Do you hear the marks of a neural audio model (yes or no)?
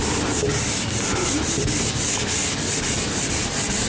no